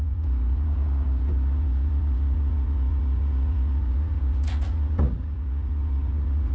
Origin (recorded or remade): remade